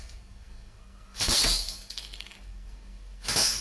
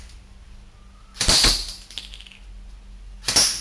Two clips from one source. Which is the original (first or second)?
second